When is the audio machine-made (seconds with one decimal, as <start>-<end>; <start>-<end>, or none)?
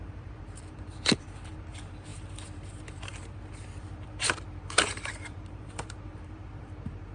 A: 0.0-7.1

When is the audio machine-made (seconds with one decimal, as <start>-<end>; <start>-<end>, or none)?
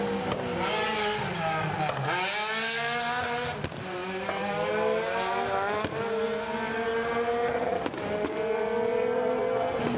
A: 4.0-4.7; 8.9-9.4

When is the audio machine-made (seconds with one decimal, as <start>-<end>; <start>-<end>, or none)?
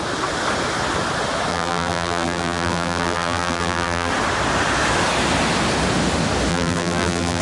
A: 1.5-4.1; 6.5-7.4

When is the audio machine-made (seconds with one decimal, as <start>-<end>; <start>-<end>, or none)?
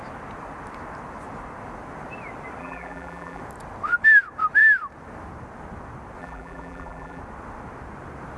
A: 2.6-3.4; 6.2-7.2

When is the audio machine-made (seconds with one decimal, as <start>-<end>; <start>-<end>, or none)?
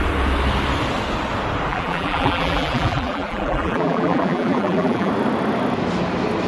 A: 1.7-5.1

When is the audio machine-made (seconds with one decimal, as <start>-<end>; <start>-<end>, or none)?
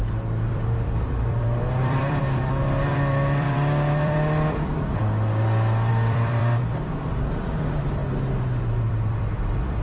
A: 0.0-5.0; 5.9-8.0; 8.6-9.8